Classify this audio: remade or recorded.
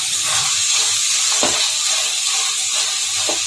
recorded